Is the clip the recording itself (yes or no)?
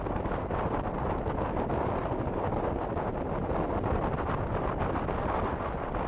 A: yes